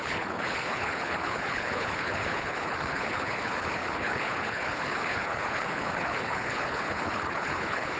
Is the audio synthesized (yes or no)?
yes